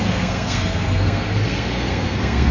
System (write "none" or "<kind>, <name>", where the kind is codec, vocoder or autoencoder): codec, SNAC